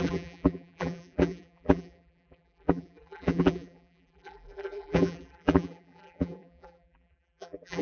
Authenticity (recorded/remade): remade